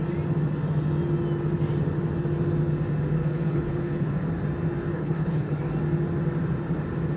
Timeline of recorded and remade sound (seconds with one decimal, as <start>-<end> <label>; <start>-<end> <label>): 0.0-3.2 recorded; 3.2-4.1 remade; 4.1-4.9 recorded; 4.9-5.6 remade; 5.6-7.2 recorded